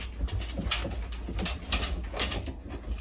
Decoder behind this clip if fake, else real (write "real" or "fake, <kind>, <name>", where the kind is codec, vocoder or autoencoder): real